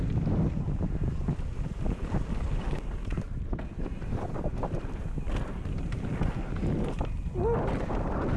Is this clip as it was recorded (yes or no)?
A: yes